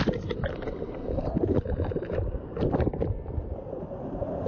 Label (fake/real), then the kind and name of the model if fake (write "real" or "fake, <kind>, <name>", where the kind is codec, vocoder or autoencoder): fake, vocoder, BigVGAN v2